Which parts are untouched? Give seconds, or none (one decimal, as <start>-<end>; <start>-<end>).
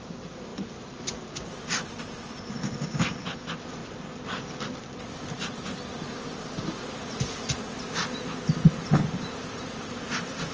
0.0-10.5